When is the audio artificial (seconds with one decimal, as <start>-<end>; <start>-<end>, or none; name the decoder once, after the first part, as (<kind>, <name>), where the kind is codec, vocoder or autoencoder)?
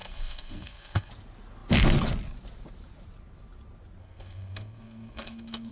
0.0-1.1 (codec, SNAC); 4.0-5.7